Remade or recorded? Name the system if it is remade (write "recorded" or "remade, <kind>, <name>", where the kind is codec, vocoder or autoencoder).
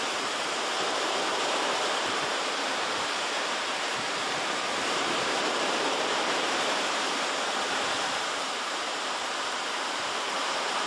remade, vocoder, BigVGAN v2